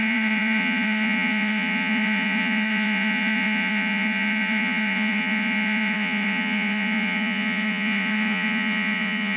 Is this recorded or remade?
remade